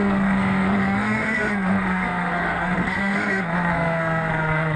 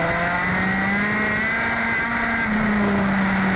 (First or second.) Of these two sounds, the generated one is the first